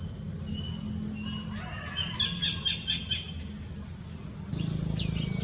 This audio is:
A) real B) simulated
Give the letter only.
A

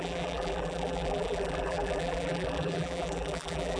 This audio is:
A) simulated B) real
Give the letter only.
A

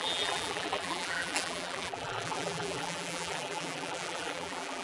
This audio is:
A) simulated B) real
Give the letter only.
A